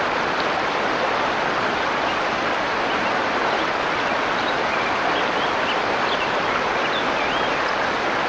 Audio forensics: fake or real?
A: real